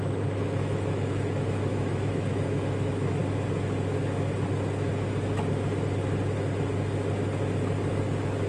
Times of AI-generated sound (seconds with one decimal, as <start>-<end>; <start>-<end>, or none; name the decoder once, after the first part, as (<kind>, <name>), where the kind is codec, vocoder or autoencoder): 0.0-3.2 (autoencoder, DAC-VAE); 7.9-8.5